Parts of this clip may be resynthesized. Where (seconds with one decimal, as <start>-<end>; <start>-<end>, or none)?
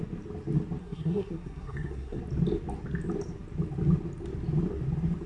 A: 0.8-2.2